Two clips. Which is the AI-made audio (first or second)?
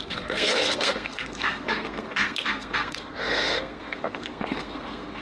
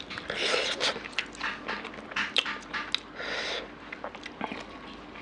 first